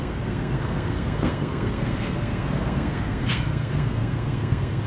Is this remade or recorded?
remade